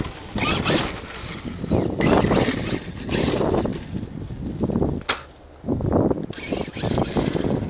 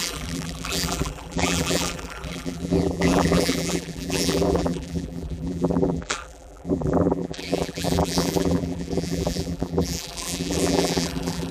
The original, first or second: first